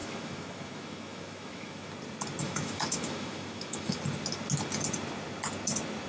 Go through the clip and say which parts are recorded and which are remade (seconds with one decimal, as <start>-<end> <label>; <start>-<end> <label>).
0.0-1.9 remade; 1.9-2.4 recorded; 2.4-4.0 remade; 4.0-6.1 recorded